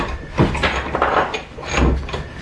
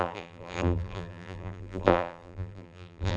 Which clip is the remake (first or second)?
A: second